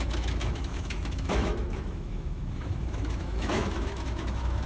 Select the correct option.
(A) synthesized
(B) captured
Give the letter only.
A